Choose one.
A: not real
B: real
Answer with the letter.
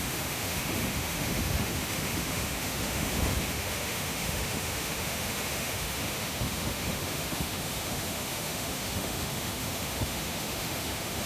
A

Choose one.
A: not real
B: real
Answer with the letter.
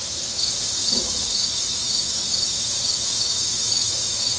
A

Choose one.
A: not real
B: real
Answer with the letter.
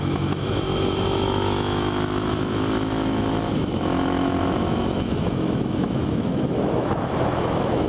A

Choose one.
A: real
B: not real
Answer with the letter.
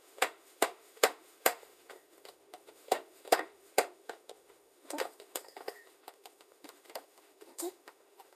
B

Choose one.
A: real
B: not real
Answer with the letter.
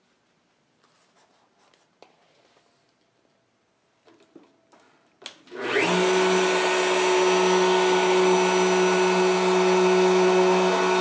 A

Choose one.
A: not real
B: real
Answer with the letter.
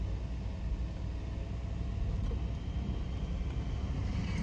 B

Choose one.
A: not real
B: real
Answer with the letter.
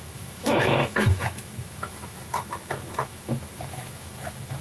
A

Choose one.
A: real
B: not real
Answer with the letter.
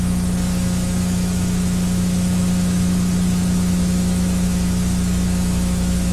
B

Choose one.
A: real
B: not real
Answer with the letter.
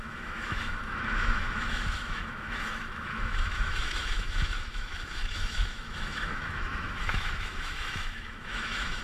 B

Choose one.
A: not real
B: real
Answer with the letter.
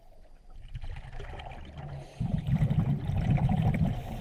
B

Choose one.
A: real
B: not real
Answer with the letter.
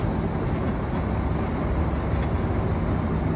A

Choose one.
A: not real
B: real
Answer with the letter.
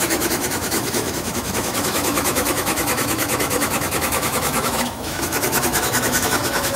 A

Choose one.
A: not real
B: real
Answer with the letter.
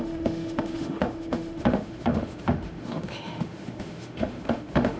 A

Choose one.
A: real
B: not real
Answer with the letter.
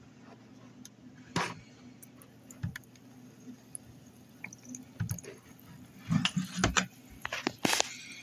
A